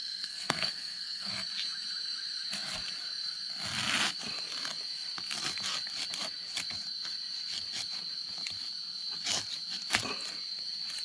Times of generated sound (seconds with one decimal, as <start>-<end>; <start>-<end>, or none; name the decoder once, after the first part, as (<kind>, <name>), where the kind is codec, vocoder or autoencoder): 0.0-1.3 (codec, SNAC)